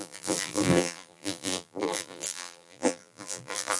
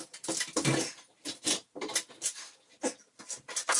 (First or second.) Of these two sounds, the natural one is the second